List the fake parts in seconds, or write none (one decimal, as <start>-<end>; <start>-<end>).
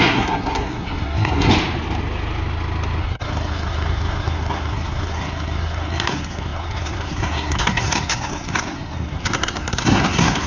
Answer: 0.0-1.5; 3.0-10.5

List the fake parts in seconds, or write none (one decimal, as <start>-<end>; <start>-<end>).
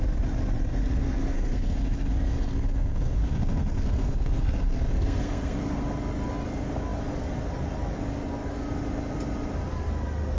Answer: 0.7-5.8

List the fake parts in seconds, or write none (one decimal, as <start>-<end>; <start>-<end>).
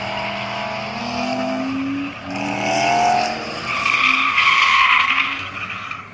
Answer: 1.0-1.6; 3.8-5.4